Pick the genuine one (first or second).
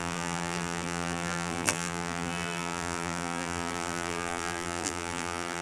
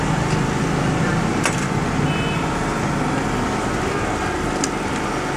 second